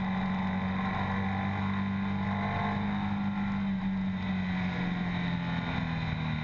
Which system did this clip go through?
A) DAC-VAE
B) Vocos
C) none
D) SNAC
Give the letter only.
C